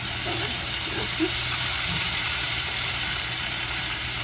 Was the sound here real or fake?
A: fake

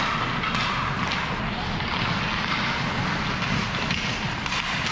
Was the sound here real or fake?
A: real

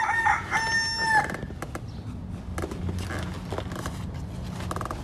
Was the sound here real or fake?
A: real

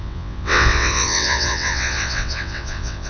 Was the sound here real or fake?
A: fake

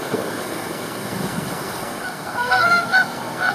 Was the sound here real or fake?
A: fake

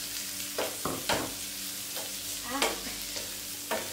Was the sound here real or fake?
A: real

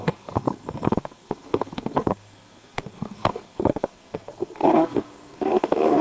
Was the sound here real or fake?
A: fake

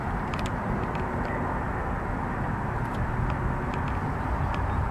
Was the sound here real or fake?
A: real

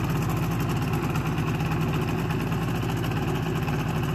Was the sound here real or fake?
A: real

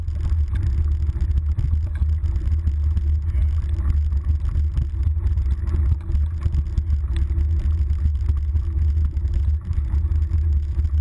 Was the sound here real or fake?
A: real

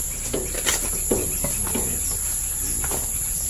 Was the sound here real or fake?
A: real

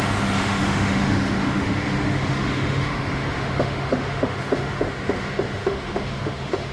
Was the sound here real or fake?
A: fake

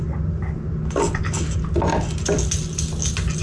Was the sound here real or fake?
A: real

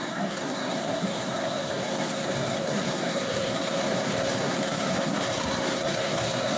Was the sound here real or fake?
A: fake